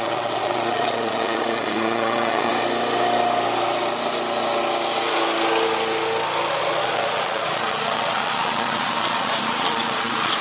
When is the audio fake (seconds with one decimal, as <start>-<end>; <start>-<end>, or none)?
0.0-2.5; 6.5-10.4